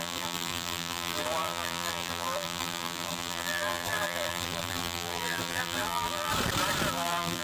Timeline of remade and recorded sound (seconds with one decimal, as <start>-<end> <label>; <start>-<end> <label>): 0.0-6.3 remade; 6.3-6.9 recorded; 6.9-7.4 remade